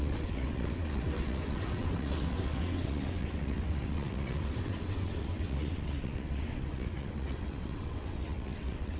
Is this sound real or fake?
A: fake